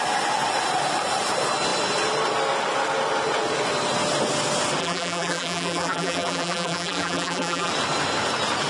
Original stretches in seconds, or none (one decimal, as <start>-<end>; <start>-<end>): 0.0-4.8; 7.7-8.7